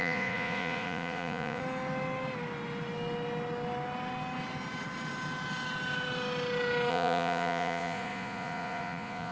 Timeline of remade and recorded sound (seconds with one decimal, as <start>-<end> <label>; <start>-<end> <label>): 0.0-1.6 remade; 1.6-6.9 recorded; 6.9-9.3 remade